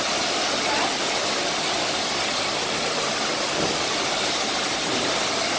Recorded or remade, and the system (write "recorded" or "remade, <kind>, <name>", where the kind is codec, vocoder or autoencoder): recorded